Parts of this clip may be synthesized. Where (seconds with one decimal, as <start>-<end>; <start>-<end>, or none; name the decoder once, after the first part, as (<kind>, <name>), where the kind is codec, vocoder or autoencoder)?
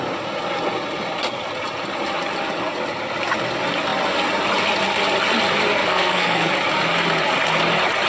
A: 5.7-6.5 (codec, SNAC)